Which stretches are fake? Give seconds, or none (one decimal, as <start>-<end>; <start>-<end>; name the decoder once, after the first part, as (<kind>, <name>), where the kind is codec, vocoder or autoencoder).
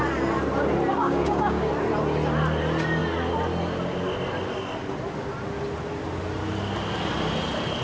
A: 1.0-1.7 (codec, DAC)